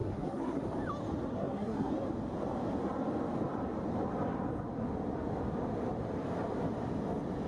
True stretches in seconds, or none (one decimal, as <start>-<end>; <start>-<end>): 0.6-1.3; 1.9-7.5